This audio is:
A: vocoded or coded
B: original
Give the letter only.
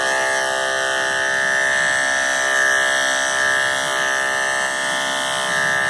B